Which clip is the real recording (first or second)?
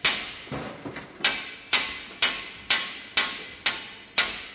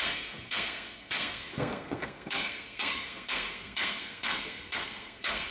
first